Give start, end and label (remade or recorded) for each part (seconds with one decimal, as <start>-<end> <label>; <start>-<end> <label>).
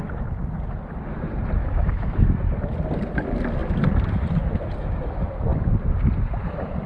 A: 0.0-1.6 recorded; 1.6-2.3 remade; 2.3-6.9 recorded